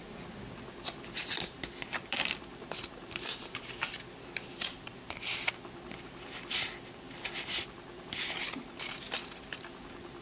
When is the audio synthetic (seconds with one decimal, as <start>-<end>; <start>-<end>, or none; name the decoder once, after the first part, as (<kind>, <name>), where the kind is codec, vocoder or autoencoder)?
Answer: 1.2-4.9 (vocoder, BigVGAN v2)